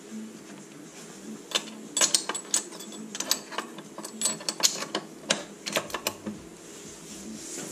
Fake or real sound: real